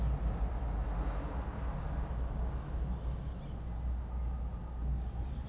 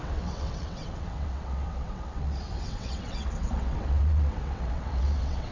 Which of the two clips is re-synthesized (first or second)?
second